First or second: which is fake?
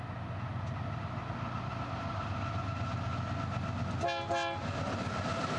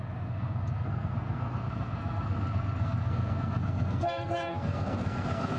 second